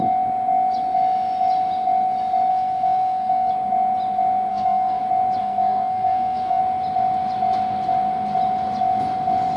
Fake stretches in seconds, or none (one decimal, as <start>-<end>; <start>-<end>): 2.5-3.5; 4.5-5.0; 5.4-6.6